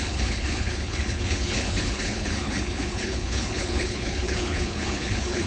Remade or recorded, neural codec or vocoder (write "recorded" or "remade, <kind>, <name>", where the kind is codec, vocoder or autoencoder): remade, codec, HILCodec